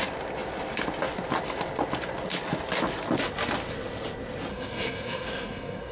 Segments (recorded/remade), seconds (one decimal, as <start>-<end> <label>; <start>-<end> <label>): 0.0-4.5 recorded; 4.5-5.9 remade